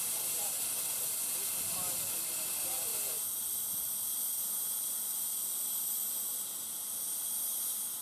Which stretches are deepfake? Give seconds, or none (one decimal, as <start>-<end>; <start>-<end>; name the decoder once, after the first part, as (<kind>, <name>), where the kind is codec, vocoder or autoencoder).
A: none